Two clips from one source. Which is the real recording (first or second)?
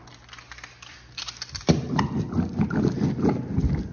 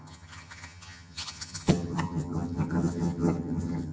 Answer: first